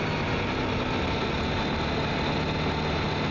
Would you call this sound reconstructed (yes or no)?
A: no